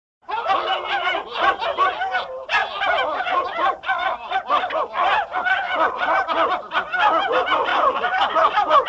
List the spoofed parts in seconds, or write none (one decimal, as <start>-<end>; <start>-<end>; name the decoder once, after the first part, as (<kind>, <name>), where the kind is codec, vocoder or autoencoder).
none

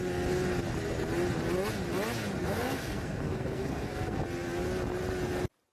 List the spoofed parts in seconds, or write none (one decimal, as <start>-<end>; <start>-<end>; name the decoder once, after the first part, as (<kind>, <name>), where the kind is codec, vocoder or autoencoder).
2.4-4.2 (codec, SNAC)

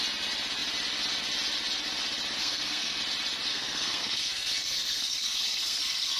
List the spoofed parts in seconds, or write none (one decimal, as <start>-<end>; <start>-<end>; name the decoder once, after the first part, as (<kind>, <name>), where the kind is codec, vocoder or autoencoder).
2.4-3.0 (codec, SNAC); 3.5-6.2